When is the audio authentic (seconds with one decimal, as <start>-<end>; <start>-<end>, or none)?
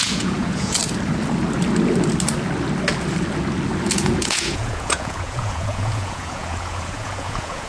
0.8-3.8